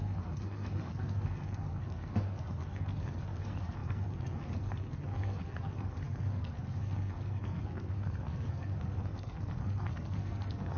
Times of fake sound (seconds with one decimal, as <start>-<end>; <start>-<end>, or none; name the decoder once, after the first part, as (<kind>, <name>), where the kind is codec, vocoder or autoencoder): 0.0-10.8 (codec, SNAC)